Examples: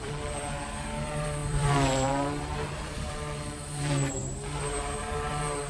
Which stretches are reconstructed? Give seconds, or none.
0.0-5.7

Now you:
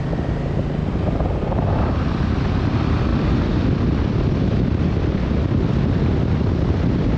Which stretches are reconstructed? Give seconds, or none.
0.0-7.2